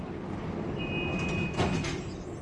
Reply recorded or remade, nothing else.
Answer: recorded